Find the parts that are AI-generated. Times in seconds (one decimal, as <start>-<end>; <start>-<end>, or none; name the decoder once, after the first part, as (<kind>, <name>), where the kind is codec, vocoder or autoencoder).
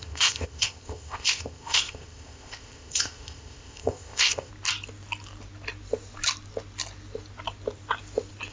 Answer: 0.0-4.5 (codec, ZipCodec)